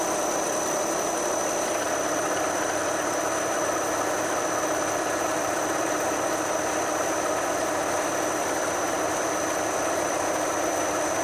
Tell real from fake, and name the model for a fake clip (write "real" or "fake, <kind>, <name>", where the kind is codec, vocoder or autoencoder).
real